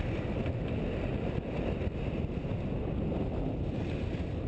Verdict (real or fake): real